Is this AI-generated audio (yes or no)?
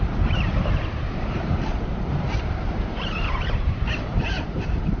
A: yes